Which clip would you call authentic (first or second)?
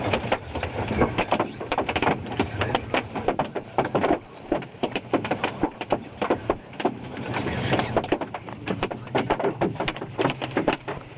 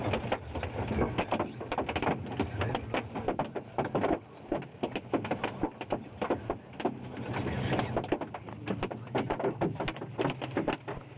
second